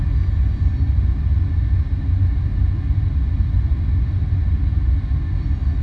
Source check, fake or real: real